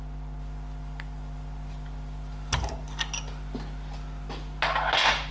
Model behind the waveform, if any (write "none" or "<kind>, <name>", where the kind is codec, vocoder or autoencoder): none